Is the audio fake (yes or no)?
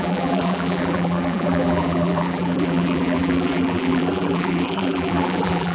yes